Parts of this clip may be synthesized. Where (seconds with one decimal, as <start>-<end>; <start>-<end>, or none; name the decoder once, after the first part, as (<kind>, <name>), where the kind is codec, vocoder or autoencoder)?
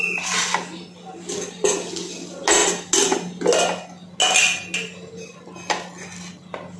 none